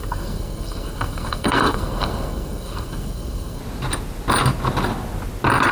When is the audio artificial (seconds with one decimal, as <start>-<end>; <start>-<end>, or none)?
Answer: 0.0-3.6